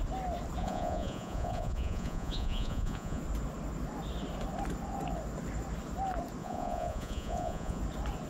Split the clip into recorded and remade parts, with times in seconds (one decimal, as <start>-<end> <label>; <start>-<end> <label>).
0.0-0.6 recorded; 0.6-3.2 remade; 3.2-6.4 recorded; 6.4-7.8 remade; 7.8-8.3 recorded